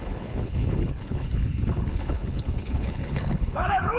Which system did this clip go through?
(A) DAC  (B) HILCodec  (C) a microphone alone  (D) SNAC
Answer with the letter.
B